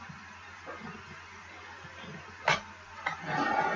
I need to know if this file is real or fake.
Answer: real